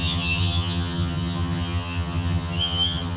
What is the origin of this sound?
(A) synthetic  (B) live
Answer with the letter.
A